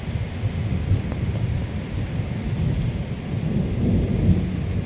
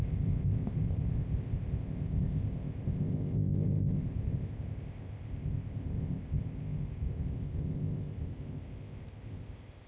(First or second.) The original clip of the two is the first